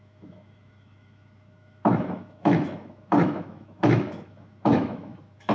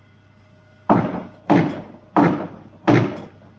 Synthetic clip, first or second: first